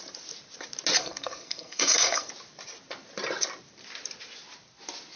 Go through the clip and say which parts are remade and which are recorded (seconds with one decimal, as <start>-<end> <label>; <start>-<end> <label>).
0.0-1.0 recorded; 1.0-2.3 remade; 2.3-5.2 recorded